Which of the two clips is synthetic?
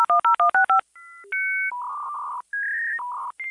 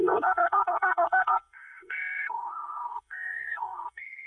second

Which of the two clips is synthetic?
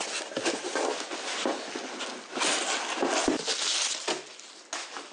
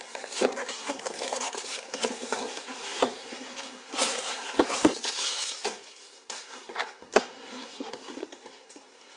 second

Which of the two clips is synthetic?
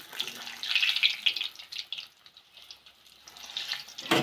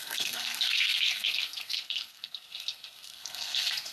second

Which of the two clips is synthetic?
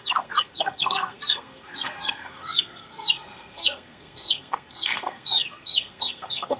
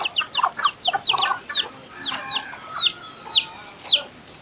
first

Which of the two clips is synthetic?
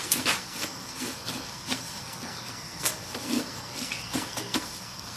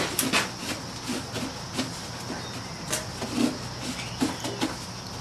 first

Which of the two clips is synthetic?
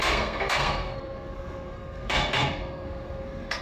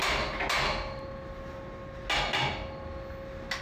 first